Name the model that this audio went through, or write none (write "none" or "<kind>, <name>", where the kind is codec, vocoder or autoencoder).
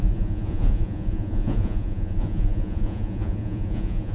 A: vocoder, Vocos